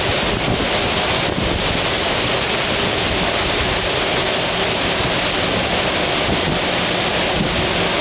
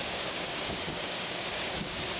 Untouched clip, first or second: first